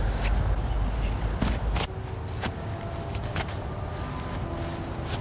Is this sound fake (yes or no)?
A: no